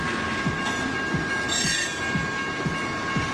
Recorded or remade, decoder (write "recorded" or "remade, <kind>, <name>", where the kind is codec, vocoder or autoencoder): recorded